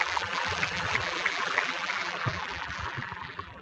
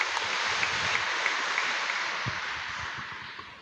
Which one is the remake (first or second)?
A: first